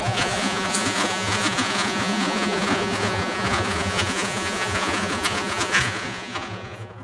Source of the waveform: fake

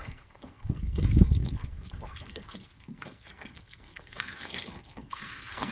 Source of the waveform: fake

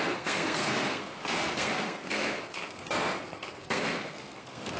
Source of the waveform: fake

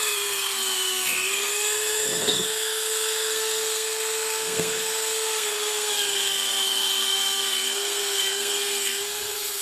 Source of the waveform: fake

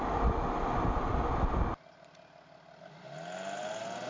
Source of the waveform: real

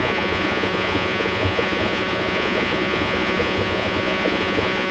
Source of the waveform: fake